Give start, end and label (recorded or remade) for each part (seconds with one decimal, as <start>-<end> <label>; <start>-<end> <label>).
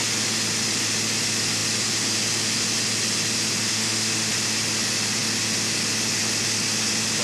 0.0-3.7 recorded; 3.7-4.3 remade; 4.3-7.2 recorded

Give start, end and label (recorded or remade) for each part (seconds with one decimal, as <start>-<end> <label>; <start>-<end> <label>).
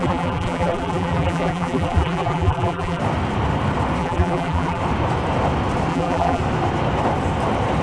0.0-3.0 remade; 3.0-4.0 recorded; 4.0-4.8 remade; 4.8-5.9 recorded; 5.9-6.4 remade; 6.4-7.8 recorded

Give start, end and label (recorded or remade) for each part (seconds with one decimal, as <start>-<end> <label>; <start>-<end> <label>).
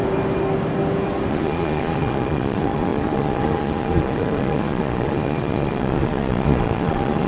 0.0-1.3 recorded; 1.3-7.3 remade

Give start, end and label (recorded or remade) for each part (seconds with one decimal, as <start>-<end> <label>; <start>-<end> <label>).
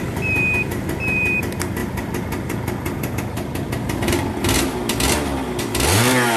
0.0-6.4 recorded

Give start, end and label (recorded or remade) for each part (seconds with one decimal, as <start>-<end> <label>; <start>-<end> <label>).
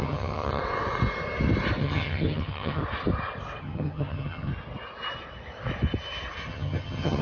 0.0-0.6 remade; 0.6-1.8 recorded; 1.8-2.8 remade; 2.8-3.6 recorded; 3.6-4.5 remade; 4.5-6.5 recorded; 6.5-7.2 remade